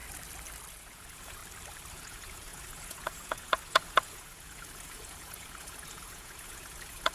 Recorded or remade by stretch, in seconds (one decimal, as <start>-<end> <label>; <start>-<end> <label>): 0.0-0.7 recorded; 0.7-1.4 remade; 1.4-1.9 recorded; 1.9-7.1 remade